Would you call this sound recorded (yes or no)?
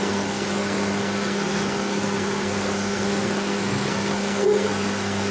no